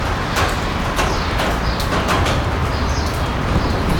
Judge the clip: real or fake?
real